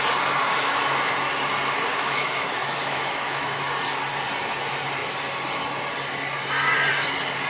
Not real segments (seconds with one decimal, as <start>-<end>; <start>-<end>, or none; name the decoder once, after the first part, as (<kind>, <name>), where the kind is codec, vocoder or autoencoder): 0.5-1.1 (autoencoder, DAC-VAE); 1.9-3.6